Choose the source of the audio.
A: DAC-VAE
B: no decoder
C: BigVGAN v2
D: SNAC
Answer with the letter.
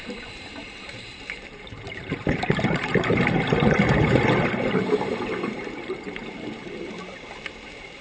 C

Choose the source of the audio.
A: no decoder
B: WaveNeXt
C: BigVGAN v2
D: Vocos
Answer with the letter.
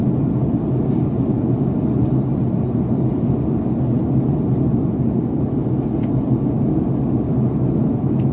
A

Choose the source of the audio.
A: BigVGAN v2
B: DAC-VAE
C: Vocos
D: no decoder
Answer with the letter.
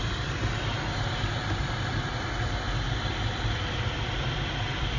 A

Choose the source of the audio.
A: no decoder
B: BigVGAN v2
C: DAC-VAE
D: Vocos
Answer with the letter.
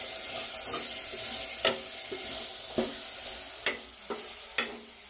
A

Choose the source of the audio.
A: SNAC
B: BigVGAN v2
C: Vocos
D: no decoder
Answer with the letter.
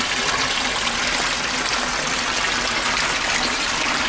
D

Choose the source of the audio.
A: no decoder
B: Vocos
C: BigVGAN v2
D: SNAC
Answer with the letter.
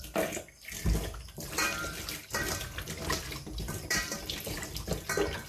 C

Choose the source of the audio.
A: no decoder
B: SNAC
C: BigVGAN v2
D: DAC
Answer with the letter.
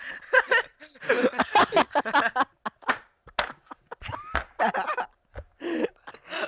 A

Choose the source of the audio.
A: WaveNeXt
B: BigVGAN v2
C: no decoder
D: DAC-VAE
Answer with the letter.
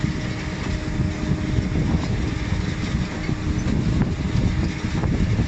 C